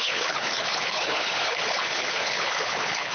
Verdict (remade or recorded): remade